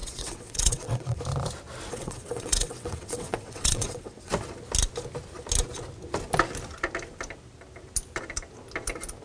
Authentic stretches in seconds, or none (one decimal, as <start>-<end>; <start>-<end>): 1.2-1.9; 4.3-9.2